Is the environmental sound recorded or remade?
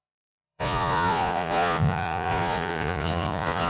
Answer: remade